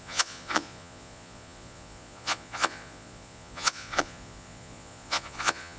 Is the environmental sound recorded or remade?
remade